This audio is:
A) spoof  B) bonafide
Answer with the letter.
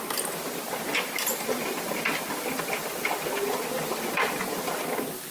B